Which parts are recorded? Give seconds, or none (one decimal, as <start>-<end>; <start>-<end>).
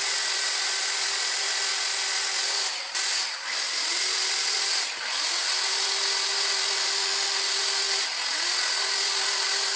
0.0-6.8; 7.5-9.8